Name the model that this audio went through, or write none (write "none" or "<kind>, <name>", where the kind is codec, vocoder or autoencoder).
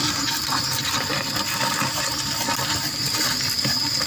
none